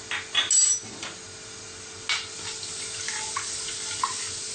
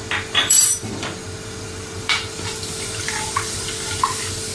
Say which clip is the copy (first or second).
second